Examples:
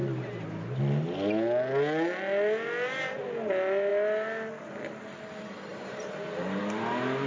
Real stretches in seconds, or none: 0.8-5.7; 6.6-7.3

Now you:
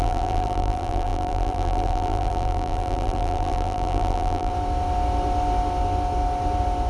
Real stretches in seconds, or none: 4.5-6.9

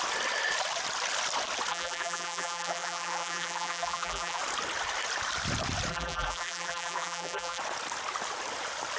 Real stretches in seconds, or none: 0.0-1.7; 4.4-5.9; 7.6-9.0